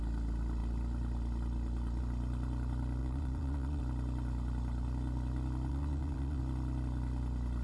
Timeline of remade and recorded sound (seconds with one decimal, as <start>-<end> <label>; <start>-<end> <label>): 0.0-3.0 recorded; 3.0-3.8 remade; 3.8-5.7 recorded; 5.7-6.4 remade; 6.4-7.6 recorded